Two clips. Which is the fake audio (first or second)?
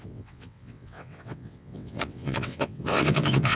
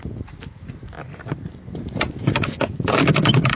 first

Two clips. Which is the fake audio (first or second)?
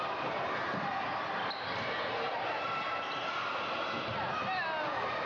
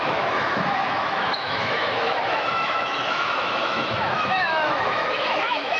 second